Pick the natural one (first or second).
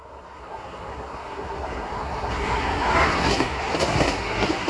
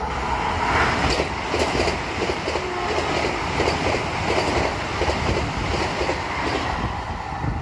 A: second